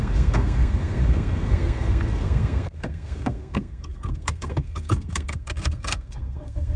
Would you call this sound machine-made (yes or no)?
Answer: yes